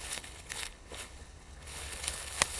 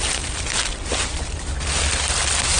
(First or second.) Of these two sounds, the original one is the second